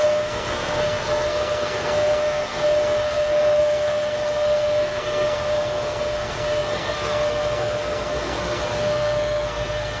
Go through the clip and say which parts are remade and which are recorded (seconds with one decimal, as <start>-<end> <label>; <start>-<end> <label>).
0.0-10.0 remade